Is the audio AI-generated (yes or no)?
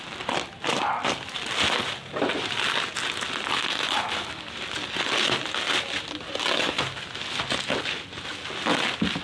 no